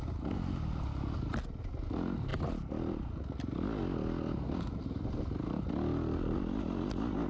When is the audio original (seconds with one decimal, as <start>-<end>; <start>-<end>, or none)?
0.0-7.3